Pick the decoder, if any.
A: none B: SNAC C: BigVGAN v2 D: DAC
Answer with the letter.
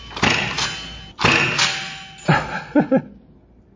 A